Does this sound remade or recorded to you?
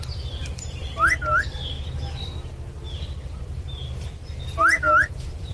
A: recorded